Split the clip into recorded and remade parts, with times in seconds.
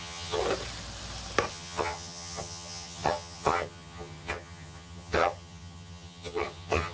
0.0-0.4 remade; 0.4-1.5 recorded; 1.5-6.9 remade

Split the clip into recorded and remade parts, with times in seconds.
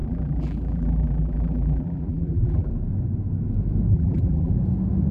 0.0-2.7 remade; 2.7-3.9 recorded; 3.9-4.5 remade; 4.5-5.1 recorded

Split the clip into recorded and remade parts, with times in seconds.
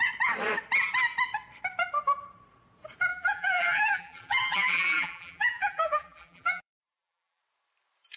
0.0-3.1 recorded; 3.1-7.4 remade; 7.4-8.2 recorded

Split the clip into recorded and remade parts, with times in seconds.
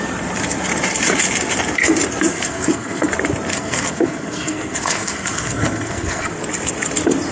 0.0-2.3 recorded; 2.3-3.1 remade; 3.1-3.5 recorded; 3.5-6.3 remade; 6.3-7.3 recorded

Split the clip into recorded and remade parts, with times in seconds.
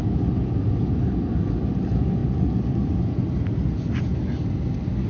0.0-5.1 recorded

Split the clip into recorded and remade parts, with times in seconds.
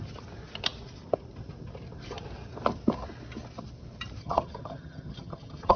0.0-4.2 recorded; 4.2-5.8 remade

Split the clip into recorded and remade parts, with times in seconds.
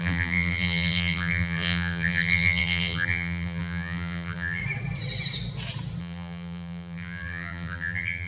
0.0-4.6 remade; 4.6-6.0 recorded; 6.0-8.3 remade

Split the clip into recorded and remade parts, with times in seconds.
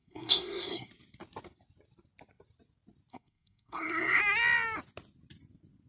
0.0-0.9 remade; 0.9-3.1 recorded; 3.1-4.2 remade; 4.2-5.9 recorded